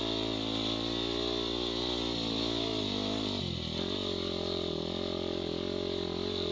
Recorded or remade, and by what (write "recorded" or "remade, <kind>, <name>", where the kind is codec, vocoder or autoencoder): recorded